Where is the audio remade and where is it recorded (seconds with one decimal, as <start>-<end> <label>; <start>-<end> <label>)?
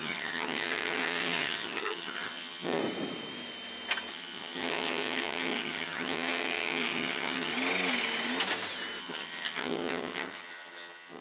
0.0-2.8 remade; 2.8-4.1 recorded; 4.1-7.5 remade; 7.5-9.0 recorded; 9.0-11.2 remade